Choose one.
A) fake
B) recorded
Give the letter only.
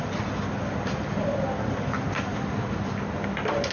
B